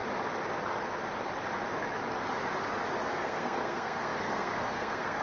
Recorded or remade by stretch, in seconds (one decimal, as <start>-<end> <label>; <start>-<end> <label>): 0.0-3.1 recorded; 3.1-5.2 remade